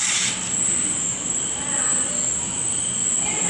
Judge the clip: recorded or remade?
recorded